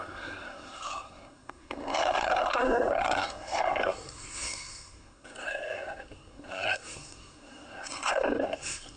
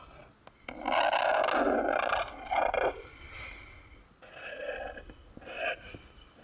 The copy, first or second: first